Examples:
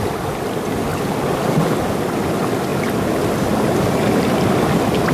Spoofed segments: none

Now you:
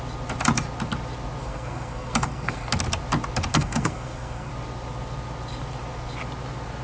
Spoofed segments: 1.4-2.7 (codec, SNAC); 3.5-4.5

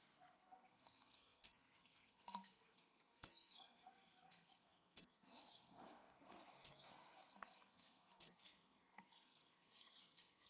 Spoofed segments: 0.0-10.5 (codec, SNAC)

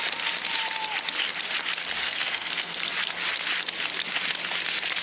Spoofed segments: 2.0-2.9 (codec, SNAC)

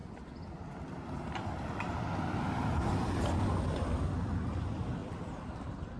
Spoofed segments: none

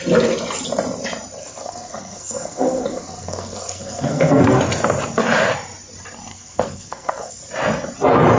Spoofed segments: 1.4-4.6 (codec, SNAC); 6.3-7.4

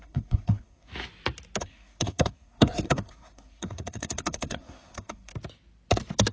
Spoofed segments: 0.0-0.9 (codec, SNAC); 1.6-5.3

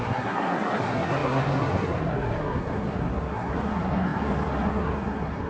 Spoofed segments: 0.0-5.5 (codec, SNAC)